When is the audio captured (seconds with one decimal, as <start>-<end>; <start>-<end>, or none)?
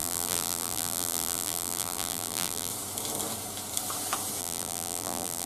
2.7-4.4